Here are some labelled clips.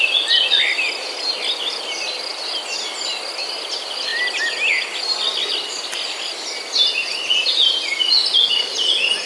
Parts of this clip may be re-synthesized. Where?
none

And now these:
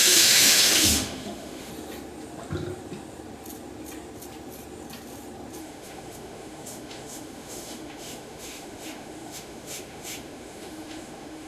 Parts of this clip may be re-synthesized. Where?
0.0-1.7 (autoencoder, DAC-VAE); 5.6-11.5

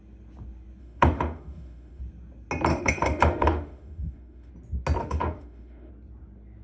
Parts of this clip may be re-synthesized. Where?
0.8-2.0 (autoencoder, DAC-VAE); 2.7-4.5; 5.0-5.9

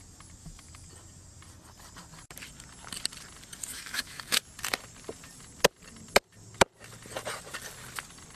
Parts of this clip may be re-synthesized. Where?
0.4-0.9 (autoencoder, DAC-VAE); 3.7-4.4

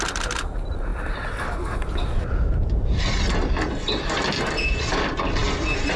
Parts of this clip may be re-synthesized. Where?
none